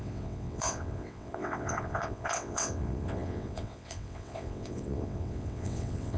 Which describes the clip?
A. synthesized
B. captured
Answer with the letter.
A